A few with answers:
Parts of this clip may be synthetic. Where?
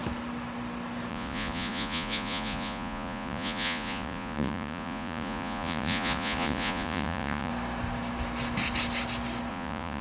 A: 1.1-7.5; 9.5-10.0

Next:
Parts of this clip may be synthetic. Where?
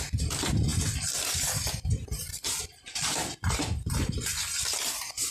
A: none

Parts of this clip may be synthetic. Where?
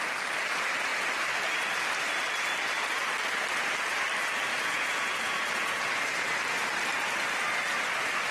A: 4.5-5.9